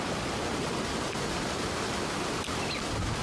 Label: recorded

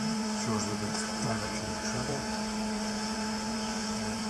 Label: remade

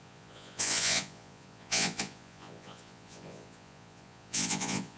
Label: remade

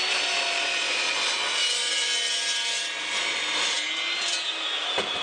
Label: recorded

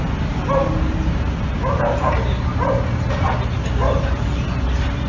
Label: recorded